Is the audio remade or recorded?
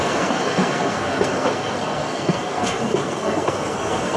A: remade